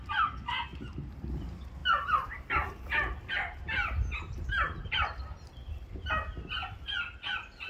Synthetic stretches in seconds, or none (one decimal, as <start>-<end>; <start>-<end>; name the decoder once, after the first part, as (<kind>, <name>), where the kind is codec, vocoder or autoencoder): none